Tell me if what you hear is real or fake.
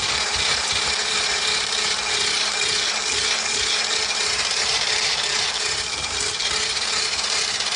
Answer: fake